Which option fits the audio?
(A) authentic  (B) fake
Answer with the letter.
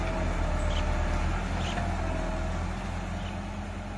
A